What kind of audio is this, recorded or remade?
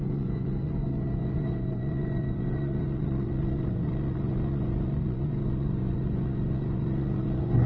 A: remade